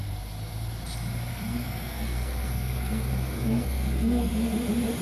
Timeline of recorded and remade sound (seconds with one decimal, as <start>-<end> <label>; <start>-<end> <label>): 0.0-1.3 recorded; 1.3-4.3 remade; 4.3-5.0 recorded

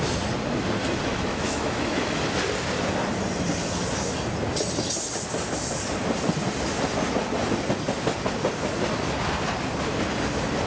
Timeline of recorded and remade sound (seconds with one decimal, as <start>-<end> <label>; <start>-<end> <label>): 0.0-1.1 recorded; 1.1-2.2 remade; 2.2-10.7 recorded

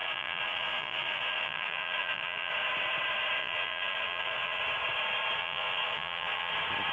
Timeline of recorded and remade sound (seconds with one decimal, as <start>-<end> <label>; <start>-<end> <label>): 0.0-2.5 remade; 2.5-3.4 recorded; 3.4-4.6 remade; 4.6-5.4 recorded; 5.4-6.5 remade; 6.5-6.9 recorded

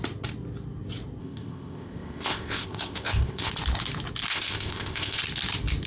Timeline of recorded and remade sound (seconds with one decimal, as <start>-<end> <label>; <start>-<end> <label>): 0.0-1.2 recorded; 1.2-3.5 remade; 3.5-4.3 recorded; 4.3-5.2 remade; 5.2-5.9 recorded

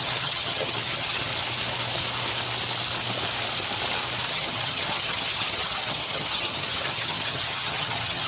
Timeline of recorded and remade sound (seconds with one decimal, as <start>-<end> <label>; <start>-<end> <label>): 0.0-1.3 remade; 1.3-4.3 recorded; 4.3-8.3 remade